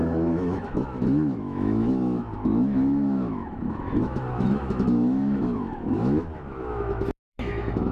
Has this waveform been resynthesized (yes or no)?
yes